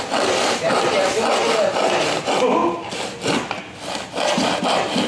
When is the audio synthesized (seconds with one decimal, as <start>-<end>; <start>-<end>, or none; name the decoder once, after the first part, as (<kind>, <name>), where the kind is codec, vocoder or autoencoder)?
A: none